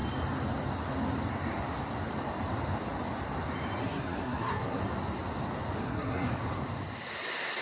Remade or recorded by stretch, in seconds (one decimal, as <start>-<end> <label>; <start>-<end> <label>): 0.0-3.8 recorded; 3.8-4.8 remade; 4.8-5.8 recorded; 5.8-6.3 remade; 6.3-7.6 recorded